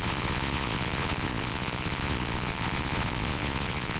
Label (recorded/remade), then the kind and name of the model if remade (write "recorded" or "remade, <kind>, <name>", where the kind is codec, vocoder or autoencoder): remade, vocoder, Vocos